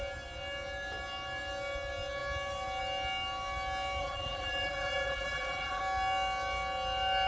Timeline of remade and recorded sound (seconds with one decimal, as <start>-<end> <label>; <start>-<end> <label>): 0.0-4.0 recorded; 4.0-5.8 remade; 5.8-7.3 recorded